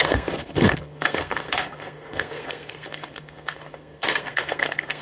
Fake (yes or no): yes